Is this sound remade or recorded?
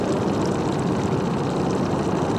recorded